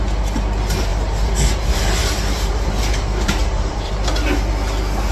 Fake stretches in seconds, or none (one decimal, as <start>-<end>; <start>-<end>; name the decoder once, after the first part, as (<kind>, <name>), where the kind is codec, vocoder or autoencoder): 0.9-3.9 (vocoder, BigVGAN v2)